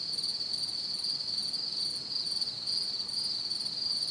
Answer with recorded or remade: recorded